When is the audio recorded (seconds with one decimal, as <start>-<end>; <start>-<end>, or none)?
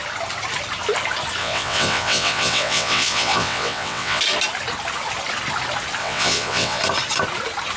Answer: 0.0-1.4; 4.2-6.0; 6.8-7.8